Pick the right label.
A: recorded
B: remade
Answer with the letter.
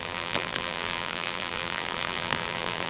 B